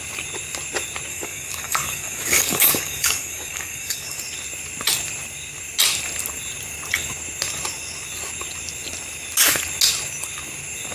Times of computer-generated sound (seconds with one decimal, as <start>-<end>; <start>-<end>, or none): 1.1-4.2